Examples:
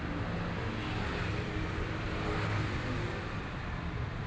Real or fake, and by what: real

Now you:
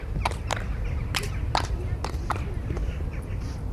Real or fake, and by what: real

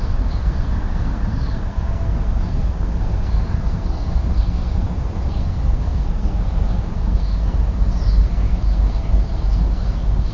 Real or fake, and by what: fake, codec, SNAC